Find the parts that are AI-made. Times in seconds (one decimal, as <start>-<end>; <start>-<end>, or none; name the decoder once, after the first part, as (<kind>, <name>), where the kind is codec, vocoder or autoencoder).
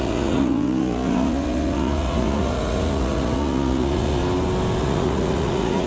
0.0-4.2 (vocoder, Vocos); 4.8-5.9